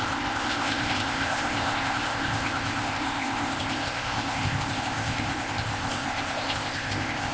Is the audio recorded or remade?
remade